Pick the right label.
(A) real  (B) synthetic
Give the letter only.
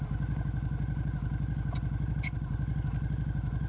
A